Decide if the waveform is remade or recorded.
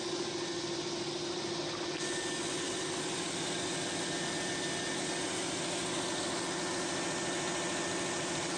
recorded